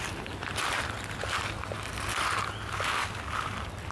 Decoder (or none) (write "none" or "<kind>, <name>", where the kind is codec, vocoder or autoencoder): none